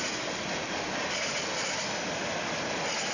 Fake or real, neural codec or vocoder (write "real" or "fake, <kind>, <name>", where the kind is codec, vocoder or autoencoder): real